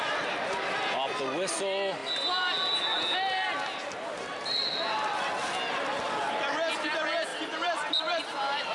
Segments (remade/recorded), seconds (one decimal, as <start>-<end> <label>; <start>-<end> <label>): 0.0-7.3 recorded; 7.3-8.2 remade; 8.2-8.7 recorded